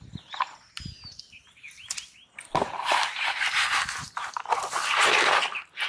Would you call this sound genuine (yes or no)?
yes